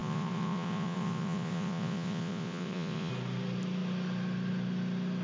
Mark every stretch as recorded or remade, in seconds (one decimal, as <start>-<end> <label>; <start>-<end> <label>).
0.0-3.1 remade; 3.1-5.2 recorded